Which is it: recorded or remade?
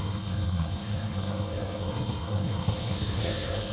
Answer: remade